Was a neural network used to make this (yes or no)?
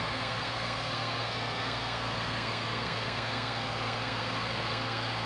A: yes